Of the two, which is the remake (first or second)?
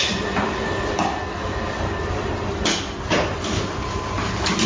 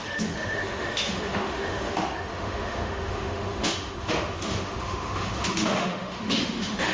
second